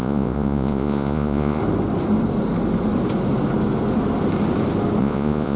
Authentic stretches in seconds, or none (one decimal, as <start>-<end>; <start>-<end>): 1.6-5.0